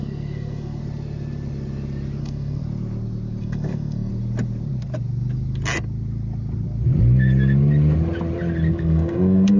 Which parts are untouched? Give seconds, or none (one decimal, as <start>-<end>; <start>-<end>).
0.8-2.2; 2.6-3.4; 4.1-8.7